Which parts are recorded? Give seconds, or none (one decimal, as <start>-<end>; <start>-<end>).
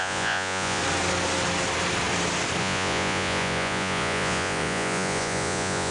0.8-2.6